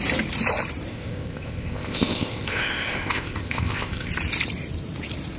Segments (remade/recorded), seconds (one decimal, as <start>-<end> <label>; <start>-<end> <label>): 0.0-0.9 recorded; 0.9-4.1 remade; 4.1-5.4 recorded